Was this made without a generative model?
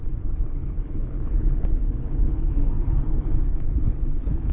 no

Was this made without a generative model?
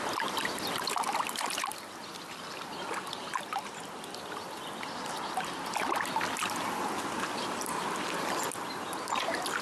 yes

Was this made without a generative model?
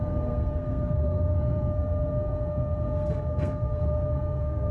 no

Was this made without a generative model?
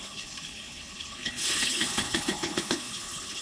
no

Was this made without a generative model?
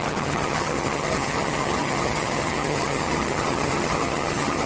no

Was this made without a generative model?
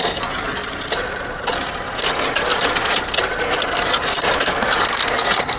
yes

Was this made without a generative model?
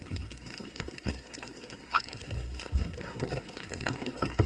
no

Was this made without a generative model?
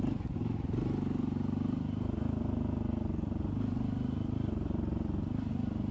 yes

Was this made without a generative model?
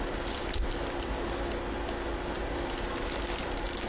yes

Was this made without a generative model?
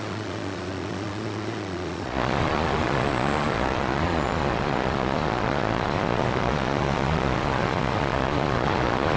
no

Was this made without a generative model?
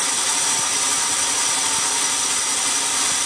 yes